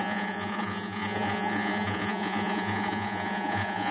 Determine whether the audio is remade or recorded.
remade